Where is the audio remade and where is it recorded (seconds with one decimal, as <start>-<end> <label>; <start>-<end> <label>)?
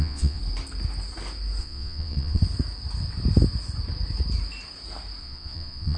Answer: 0.0-0.4 remade; 0.4-1.6 recorded; 1.6-2.4 remade; 2.4-5.2 recorded; 5.2-6.0 remade